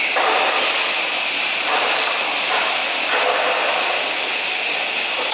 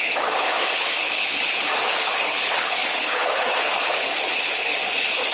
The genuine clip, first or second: first